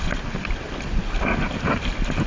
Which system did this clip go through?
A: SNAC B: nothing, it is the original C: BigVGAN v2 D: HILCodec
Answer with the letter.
B